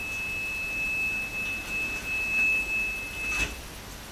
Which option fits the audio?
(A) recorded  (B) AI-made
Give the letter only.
A